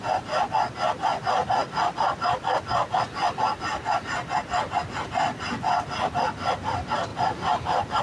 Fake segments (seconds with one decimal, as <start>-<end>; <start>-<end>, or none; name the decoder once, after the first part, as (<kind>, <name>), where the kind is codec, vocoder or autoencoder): 7.1-8.0 (vocoder, BigVGAN v2)

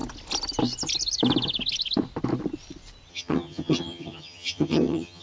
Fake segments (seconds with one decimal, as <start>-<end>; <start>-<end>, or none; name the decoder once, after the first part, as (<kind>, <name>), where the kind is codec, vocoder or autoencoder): 3.1-5.2 (vocoder, HiFi-GAN)

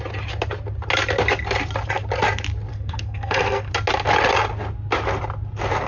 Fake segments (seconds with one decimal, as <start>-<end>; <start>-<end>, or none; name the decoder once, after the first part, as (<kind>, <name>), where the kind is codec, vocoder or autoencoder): 2.7-3.7 (codec, SNAC)

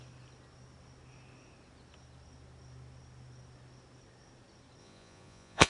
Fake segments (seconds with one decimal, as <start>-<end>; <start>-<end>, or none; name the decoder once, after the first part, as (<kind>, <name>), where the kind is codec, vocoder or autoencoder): 4.8-5.7 (vocoder, Vocos)

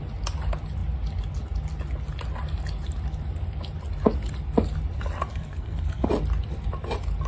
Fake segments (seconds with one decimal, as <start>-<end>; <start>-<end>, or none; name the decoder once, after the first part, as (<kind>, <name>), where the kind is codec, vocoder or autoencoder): 5.3-6.1 (codec, SNAC)